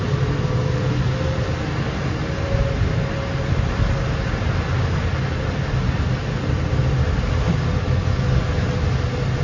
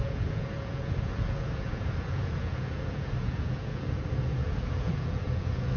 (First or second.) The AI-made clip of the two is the second